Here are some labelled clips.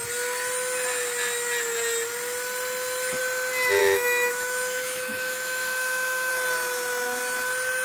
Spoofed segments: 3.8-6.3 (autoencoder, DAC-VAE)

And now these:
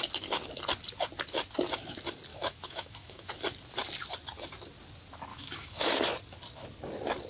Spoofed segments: 2.3-3.3 (autoencoder, DAC-VAE); 5.3-5.9

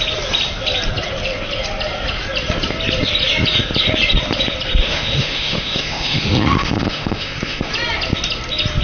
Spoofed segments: 4.8-7.7 (autoencoder, DAC-VAE)

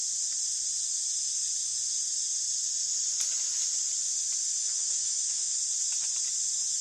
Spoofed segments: 4.6-5.6 (autoencoder, DAC-VAE)

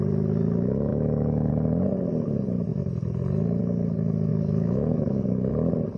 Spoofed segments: 0.9-1.5 (autoencoder, DAC-VAE); 4.3-5.5

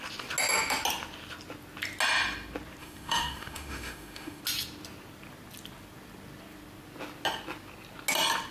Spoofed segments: 2.8-4.4 (autoencoder, DAC-VAE)

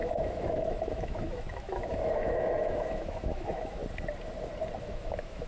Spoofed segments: 0.0-3.8 (autoencoder, DAC-VAE); 4.8-5.5